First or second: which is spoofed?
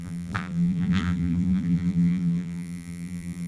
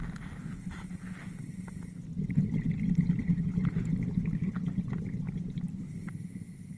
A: first